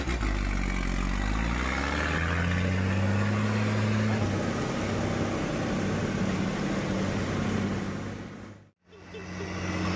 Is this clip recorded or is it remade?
recorded